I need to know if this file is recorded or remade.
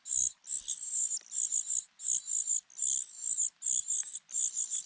recorded